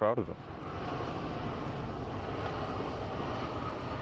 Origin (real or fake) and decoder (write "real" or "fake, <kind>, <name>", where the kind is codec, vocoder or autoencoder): real